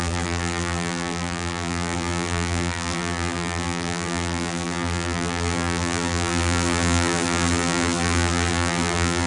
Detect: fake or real fake